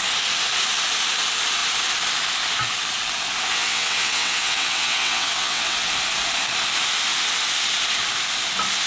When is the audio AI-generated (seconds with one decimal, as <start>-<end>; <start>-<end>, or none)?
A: 3.5-5.9